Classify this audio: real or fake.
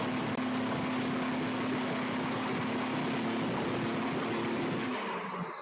real